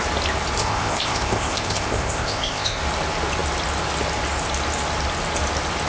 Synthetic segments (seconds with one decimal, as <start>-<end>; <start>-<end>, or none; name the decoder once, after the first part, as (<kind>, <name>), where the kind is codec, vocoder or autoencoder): 0.6-2.8 (codec, ZipCodec)